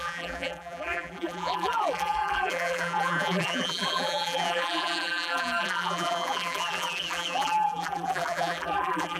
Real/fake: fake